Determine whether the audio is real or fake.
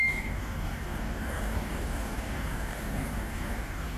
fake